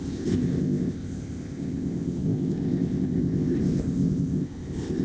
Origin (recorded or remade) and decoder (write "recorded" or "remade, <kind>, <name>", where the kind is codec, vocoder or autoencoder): remade, codec, ZipCodec